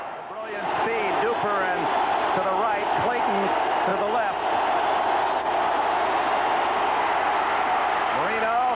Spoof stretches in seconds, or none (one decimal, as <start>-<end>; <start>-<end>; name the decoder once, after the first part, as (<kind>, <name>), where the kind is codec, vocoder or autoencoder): none